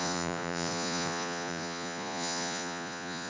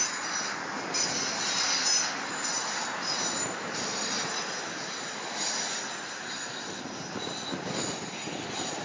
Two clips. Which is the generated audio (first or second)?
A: first